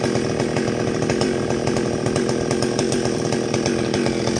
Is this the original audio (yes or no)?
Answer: yes